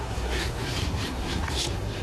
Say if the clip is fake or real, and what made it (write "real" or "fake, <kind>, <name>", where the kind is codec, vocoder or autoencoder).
fake, codec, SNAC